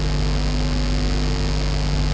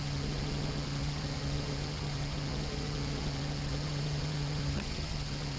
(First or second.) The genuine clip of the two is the first